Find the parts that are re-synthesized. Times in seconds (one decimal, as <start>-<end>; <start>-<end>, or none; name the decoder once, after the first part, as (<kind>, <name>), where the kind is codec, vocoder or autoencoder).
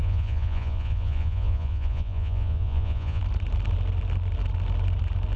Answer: 0.0-3.2 (vocoder, Vocos)